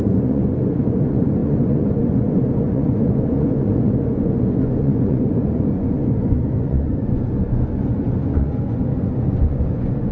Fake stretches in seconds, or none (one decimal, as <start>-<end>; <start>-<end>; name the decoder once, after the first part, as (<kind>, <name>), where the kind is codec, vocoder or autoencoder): 0.0-10.1 (vocoder, Vocos)